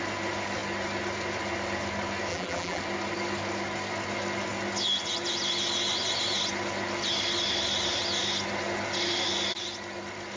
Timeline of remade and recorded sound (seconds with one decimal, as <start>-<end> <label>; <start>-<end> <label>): 0.0-2.3 recorded; 2.3-2.8 remade; 2.8-10.4 recorded